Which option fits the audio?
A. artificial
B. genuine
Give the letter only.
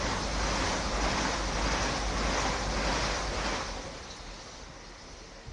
B